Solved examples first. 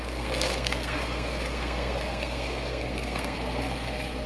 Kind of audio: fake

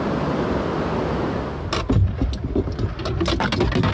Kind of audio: real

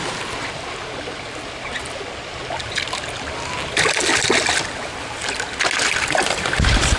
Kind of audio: real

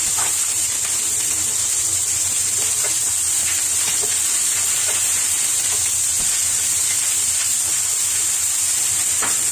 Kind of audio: real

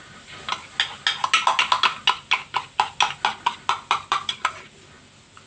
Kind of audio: real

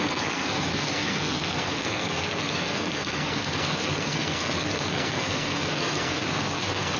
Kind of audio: fake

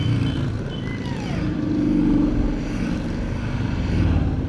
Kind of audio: real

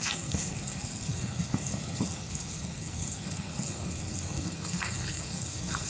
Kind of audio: fake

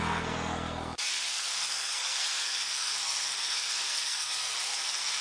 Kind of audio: fake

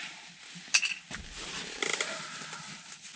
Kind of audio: real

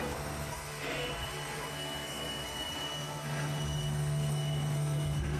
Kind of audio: fake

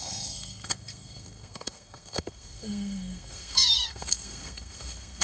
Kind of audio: fake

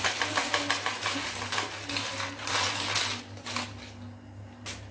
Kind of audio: real